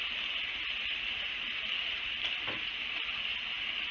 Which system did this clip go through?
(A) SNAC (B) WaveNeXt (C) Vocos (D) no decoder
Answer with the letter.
D